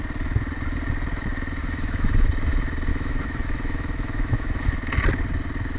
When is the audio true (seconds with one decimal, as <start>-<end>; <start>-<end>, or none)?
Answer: 0.0-1.6; 2.3-2.9; 4.7-5.8